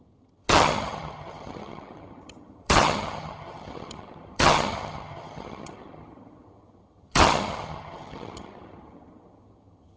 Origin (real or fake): fake